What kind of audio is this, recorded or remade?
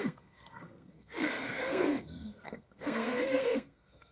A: remade